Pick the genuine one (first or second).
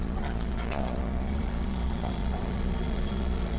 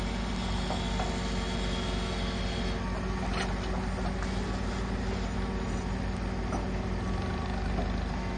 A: second